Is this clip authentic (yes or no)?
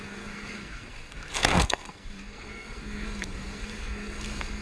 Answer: no